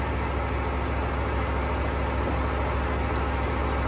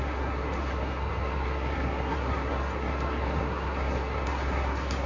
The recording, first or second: first